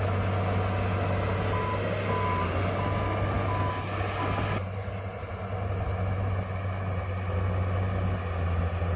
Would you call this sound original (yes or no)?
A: yes